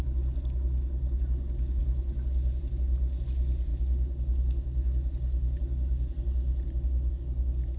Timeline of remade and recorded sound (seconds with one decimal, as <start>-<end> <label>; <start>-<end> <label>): 0.0-7.8 recorded